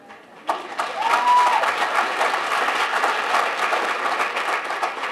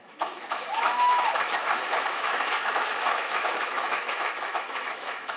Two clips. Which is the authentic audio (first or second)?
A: first